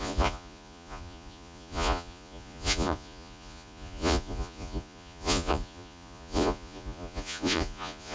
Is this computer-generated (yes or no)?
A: yes